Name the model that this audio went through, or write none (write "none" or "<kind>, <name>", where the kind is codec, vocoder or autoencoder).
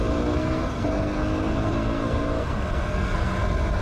codec, SNAC